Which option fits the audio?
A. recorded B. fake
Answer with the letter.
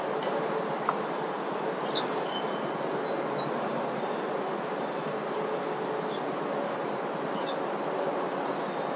A